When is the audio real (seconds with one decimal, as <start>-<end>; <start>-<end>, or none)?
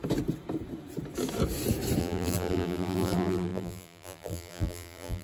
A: 0.0-2.0